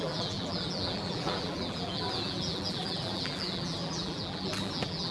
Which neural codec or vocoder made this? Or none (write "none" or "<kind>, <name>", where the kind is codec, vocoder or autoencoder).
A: vocoder, BigVGAN v2